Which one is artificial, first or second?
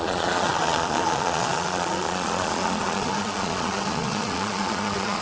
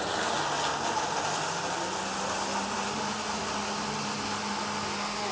first